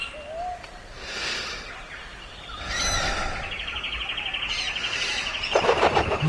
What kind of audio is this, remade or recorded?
recorded